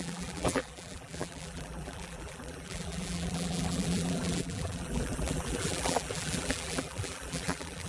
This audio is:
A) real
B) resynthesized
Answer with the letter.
B